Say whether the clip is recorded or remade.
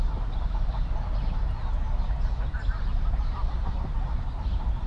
recorded